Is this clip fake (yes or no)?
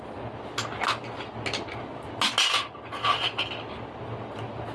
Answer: no